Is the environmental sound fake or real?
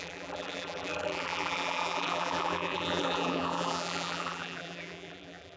fake